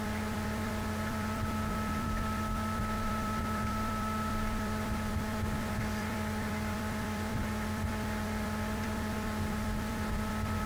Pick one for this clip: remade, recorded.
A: remade